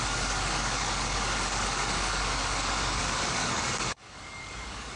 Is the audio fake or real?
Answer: fake